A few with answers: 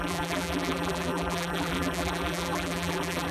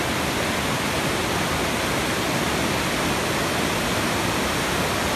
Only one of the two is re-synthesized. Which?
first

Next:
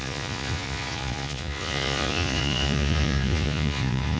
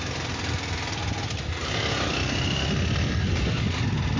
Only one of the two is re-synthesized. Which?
first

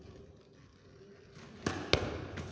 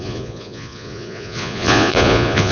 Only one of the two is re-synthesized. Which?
second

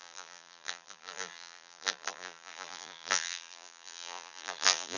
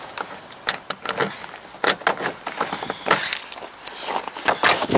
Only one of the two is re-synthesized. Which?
first